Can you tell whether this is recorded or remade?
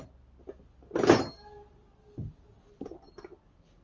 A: recorded